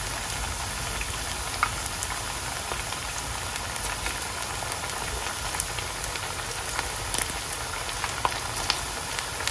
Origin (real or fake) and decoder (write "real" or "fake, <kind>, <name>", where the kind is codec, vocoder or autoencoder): real